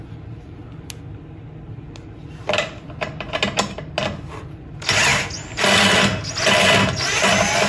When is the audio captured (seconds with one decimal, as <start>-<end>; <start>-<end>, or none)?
0.0-7.7